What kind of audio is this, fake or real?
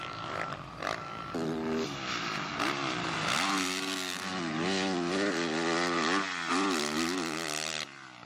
real